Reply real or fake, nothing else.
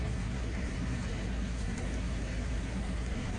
fake